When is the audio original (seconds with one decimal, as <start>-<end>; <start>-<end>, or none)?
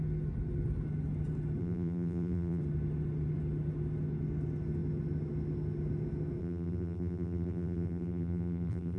0.0-1.6; 2.6-6.4